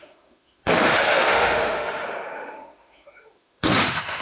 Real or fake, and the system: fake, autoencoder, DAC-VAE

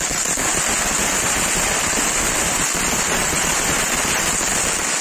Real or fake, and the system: real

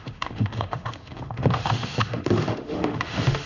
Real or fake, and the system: fake, autoencoder, DAC-VAE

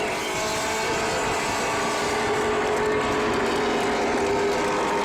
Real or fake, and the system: real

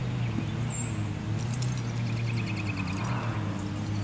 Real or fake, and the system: real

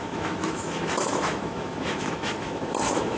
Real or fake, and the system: fake, autoencoder, DAC-VAE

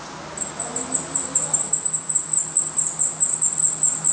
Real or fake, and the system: real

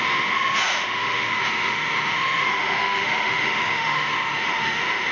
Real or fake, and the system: fake, autoencoder, DAC-VAE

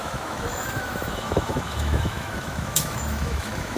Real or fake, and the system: fake, autoencoder, DAC-VAE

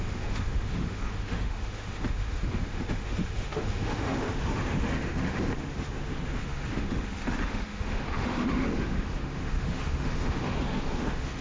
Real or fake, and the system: fake, autoencoder, DAC-VAE